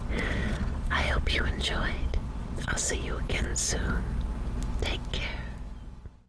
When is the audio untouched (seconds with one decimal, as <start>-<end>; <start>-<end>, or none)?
3.5-6.3